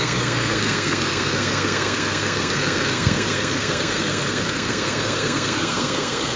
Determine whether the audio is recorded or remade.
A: remade